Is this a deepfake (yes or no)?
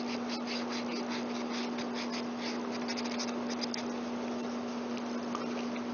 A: no